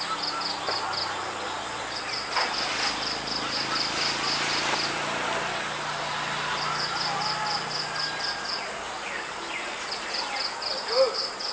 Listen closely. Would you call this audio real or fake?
real